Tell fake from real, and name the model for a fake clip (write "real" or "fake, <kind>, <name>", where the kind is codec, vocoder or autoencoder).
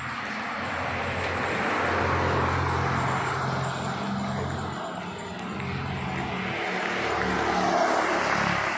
real